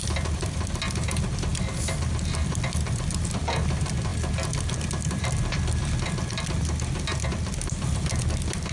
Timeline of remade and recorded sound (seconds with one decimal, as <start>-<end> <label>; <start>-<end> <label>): 0.0-8.7 recorded